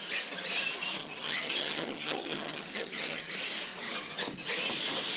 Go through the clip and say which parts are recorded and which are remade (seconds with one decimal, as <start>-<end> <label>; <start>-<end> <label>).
0.0-1.0 recorded; 1.0-3.3 remade; 3.3-5.2 recorded